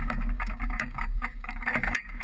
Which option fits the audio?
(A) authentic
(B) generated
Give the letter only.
B